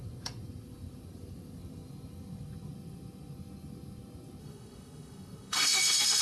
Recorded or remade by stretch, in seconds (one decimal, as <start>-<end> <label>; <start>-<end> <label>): 0.0-4.4 recorded; 4.4-6.2 remade